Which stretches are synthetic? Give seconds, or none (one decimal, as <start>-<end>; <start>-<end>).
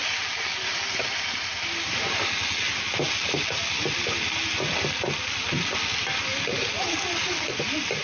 none